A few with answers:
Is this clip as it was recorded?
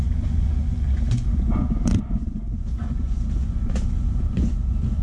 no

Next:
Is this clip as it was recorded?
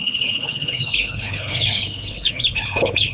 no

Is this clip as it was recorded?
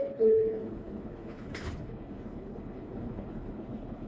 no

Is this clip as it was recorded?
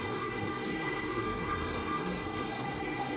no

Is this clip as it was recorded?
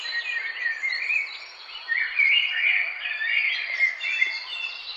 no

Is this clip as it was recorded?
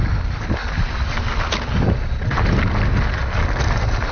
yes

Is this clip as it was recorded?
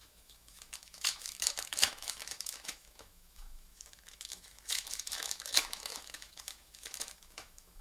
no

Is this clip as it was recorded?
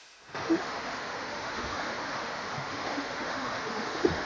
no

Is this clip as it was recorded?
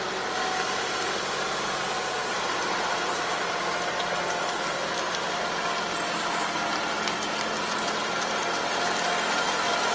yes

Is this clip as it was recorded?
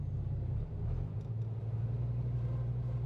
yes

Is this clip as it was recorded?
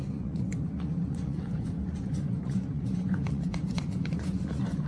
no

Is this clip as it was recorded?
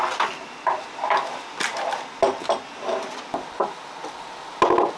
yes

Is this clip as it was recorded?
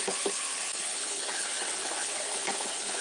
no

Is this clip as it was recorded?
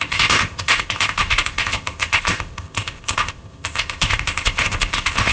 no